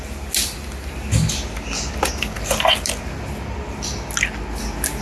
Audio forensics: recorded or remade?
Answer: recorded